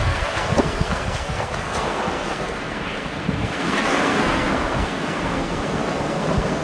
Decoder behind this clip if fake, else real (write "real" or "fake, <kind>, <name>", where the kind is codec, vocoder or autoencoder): fake, codec, SNAC